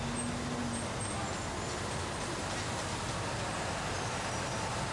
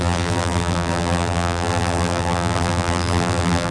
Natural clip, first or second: first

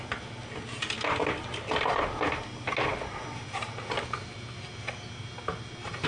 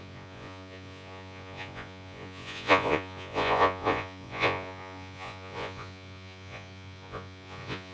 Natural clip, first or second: first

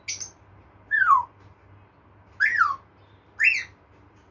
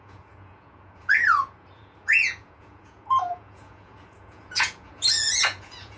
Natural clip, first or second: first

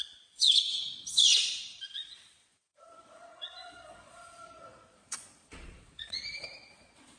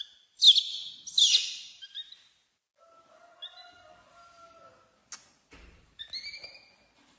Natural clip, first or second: second